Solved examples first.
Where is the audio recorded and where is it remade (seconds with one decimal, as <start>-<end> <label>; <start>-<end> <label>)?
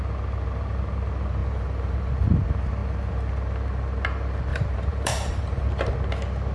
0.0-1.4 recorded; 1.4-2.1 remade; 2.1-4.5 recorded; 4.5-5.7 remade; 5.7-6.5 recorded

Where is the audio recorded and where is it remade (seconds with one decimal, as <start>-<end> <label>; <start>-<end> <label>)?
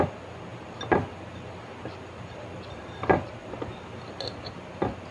0.0-0.5 recorded; 0.5-3.6 remade; 3.6-5.1 recorded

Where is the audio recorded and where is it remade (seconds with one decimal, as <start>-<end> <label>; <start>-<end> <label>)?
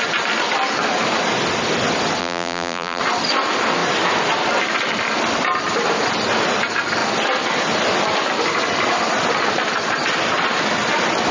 0.0-2.2 recorded; 2.2-3.0 remade; 3.0-11.3 recorded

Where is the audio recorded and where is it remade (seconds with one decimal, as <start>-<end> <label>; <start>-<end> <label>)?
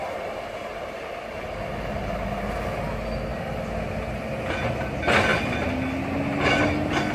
0.0-3.3 recorded; 3.3-4.6 remade; 4.6-7.1 recorded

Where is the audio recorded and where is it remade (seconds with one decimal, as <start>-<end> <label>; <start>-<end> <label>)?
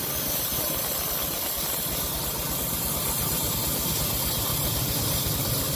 0.0-4.5 recorded; 4.5-5.3 remade; 5.3-5.8 recorded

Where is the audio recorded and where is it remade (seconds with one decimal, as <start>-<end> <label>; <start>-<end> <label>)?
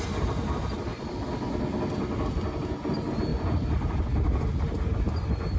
0.0-0.9 recorded; 0.9-1.4 remade; 1.4-3.3 recorded; 3.3-4.0 remade; 4.0-5.6 recorded